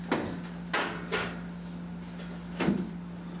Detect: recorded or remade recorded